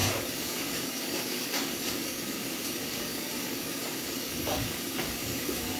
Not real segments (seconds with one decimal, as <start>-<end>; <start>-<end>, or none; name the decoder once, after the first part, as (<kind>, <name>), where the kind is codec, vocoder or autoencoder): 0.0-5.8 (codec, DAC)